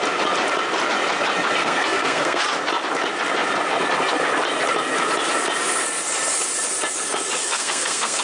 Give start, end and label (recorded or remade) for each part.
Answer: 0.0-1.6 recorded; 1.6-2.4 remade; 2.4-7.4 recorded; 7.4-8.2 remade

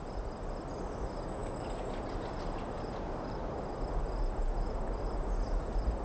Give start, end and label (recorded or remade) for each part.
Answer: 0.0-6.0 recorded

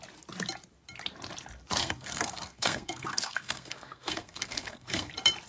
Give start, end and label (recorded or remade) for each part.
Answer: 0.0-1.8 recorded; 1.8-5.1 remade; 5.1-5.5 recorded

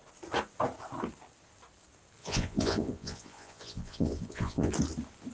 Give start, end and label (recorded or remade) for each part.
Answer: 0.0-2.2 recorded; 2.2-4.7 remade; 4.7-5.3 recorded

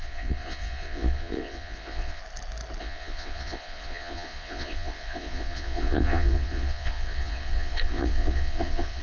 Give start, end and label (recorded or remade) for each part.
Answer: 0.0-2.2 remade; 2.2-2.8 recorded; 2.8-9.0 remade

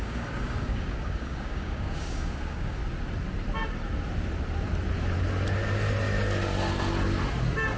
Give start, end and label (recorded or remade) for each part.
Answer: 0.0-2.8 remade; 2.8-7.8 recorded